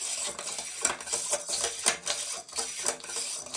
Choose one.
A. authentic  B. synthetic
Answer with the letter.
A